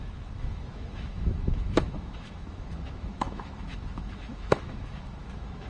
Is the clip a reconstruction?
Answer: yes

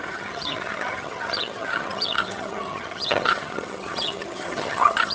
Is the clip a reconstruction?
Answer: yes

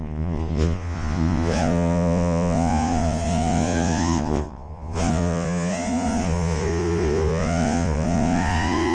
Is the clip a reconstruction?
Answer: yes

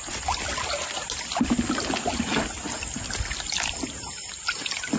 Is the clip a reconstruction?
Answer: no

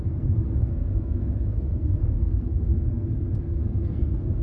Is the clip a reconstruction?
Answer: yes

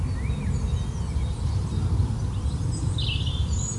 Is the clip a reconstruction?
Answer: no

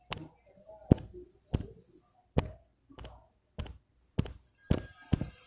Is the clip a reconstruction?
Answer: no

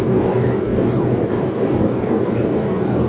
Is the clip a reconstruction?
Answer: yes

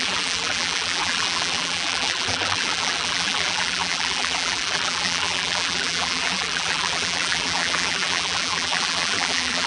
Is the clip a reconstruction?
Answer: yes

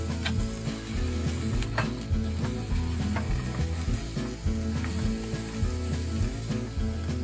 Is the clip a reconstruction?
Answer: no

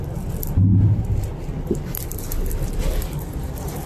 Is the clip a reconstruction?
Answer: no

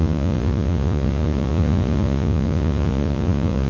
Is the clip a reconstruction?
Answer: yes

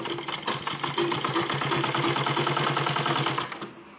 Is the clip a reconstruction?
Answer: no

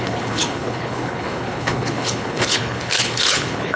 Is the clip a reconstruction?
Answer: yes